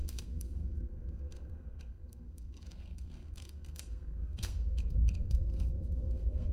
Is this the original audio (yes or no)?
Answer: no